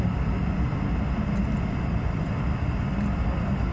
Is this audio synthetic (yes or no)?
no